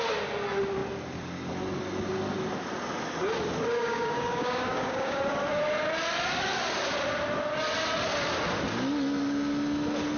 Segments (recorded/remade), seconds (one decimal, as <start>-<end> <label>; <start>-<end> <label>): 0.0-3.8 recorded; 3.8-5.2 remade; 5.2-10.2 recorded